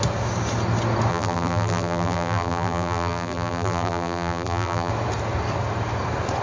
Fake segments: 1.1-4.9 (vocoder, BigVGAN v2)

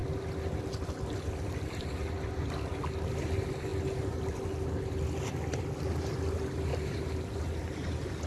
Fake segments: 6.7-7.4 (vocoder, BigVGAN v2)

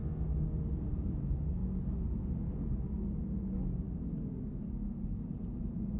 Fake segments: 0.8-1.6 (vocoder, BigVGAN v2); 5.2-6.0

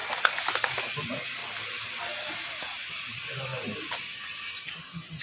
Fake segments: 0.0-0.8 (vocoder, BigVGAN v2); 1.4-2.9; 3.5-4.5